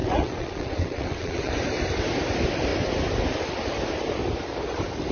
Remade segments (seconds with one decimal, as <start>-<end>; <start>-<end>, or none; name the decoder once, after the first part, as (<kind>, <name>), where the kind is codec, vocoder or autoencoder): 0.0-1.5 (vocoder, WaveNeXt)